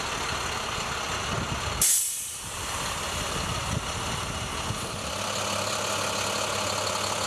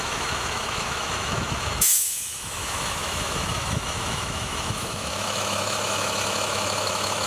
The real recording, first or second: first